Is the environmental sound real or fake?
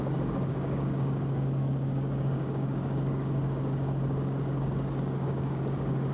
fake